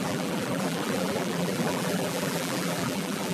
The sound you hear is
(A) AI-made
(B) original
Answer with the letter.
A